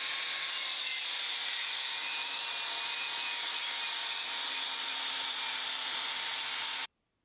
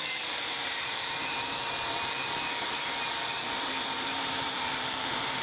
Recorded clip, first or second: first